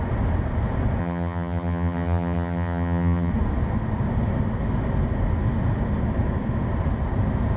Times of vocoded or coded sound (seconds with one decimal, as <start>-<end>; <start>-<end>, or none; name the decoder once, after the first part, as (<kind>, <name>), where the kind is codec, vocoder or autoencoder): 1.0-3.3 (vocoder, HiFi-GAN)